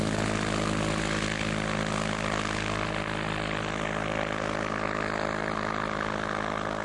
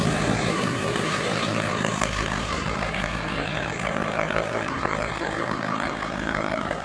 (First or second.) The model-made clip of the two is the second